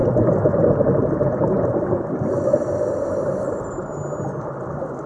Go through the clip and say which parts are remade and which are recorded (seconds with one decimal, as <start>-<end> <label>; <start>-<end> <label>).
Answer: 0.0-3.1 recorded; 3.1-4.0 remade; 4.0-5.1 recorded